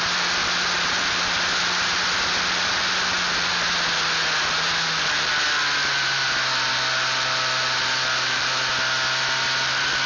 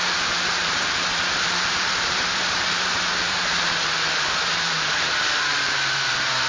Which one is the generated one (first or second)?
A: second